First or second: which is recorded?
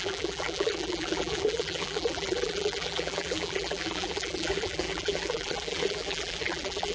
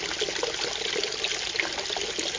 second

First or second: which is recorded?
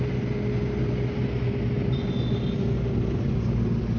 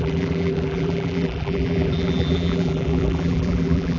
first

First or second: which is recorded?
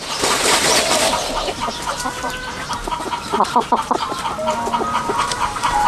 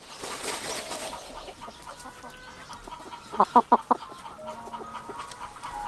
second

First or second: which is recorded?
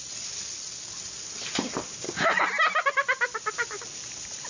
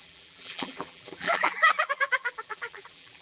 first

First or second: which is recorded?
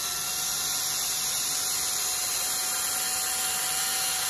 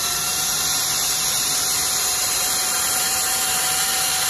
first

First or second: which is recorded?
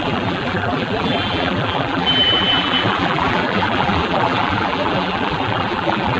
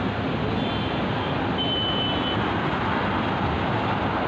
second